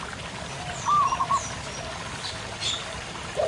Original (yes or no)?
no